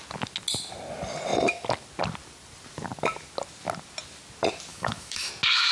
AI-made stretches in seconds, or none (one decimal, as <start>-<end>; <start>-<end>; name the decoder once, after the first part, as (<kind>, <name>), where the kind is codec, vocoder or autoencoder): 4.7-5.3 (autoencoder, DAC-VAE)